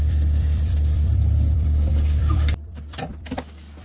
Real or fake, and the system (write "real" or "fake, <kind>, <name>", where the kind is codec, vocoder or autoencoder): fake, vocoder, BigVGAN v2